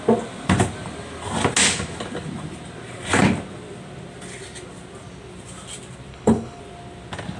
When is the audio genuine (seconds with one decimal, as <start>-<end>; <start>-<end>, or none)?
0.0-6.1; 6.6-7.4